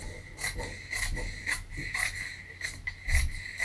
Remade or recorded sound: recorded